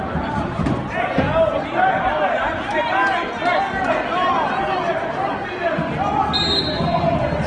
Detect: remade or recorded recorded